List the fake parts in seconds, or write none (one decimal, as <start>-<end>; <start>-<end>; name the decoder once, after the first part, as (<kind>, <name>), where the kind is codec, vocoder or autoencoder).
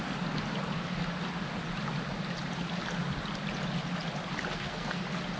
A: 4.5-5.0 (codec, SNAC)